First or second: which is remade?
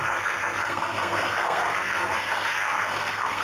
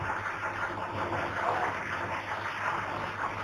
first